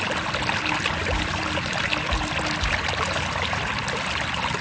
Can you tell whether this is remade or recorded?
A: recorded